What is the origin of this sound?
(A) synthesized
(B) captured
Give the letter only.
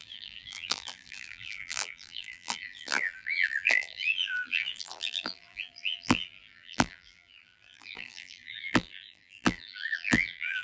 A